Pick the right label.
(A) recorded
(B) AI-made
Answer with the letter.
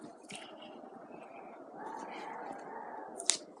A